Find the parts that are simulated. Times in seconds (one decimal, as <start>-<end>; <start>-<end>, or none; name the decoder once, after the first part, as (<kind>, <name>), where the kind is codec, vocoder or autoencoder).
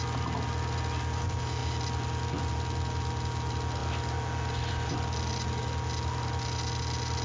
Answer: none